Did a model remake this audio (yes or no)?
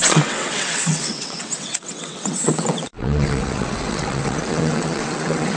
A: yes